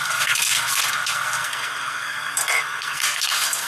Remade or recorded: remade